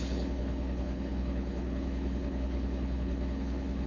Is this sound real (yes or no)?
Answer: no